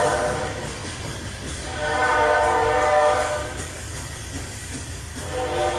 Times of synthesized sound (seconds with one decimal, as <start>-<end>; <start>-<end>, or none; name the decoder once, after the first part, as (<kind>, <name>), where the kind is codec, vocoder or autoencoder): 0.0-5.1 (codec, DAC)

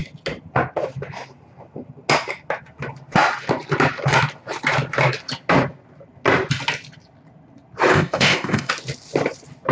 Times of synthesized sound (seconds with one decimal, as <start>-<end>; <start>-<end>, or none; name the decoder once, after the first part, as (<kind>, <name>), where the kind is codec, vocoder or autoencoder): 7.9-8.7 (codec, ZipCodec)

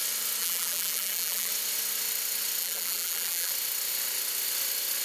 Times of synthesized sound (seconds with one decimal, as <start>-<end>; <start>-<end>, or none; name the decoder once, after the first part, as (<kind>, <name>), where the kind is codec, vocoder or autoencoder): 0.4-1.5 (vocoder, BigVGAN v2); 2.6-3.5

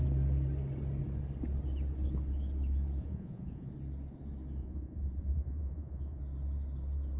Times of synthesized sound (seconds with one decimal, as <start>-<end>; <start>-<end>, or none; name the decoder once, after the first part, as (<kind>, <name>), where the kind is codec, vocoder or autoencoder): 3.0-3.7 (vocoder, Vocos); 4.6-6.2

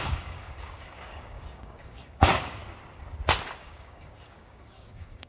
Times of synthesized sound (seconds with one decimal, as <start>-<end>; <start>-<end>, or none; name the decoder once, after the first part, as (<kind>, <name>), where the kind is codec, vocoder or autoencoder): 0.0-2.6 (codec, DAC); 3.6-5.3

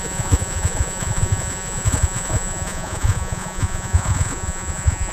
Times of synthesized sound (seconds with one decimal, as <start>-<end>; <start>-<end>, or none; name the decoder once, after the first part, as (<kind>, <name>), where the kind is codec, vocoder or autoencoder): 0.0-5.1 (vocoder, Vocos)

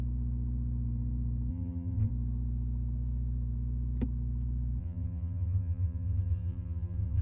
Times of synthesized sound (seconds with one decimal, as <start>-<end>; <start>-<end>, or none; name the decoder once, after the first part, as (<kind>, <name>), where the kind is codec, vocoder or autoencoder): 1.5-2.1 (vocoder, BigVGAN v2); 4.8-7.2

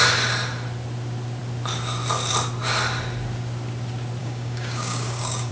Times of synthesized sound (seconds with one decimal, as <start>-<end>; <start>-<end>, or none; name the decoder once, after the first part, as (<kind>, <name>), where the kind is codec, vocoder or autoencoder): 4.2-5.5 (codec, DAC)